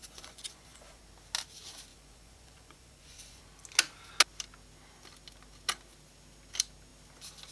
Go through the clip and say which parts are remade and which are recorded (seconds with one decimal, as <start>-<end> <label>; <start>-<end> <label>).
0.0-1.0 remade; 1.0-1.9 recorded; 1.9-3.4 remade; 3.4-7.5 recorded